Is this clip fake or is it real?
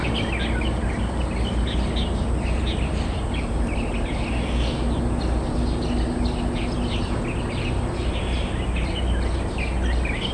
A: real